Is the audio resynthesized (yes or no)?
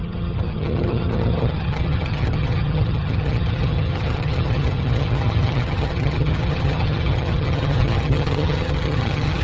yes